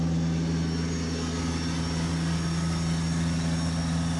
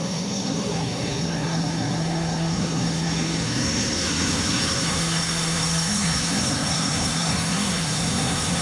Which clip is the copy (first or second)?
second